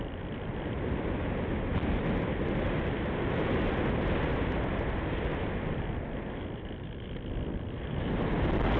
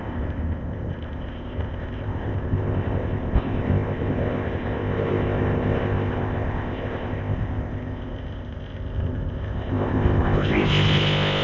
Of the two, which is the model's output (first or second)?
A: second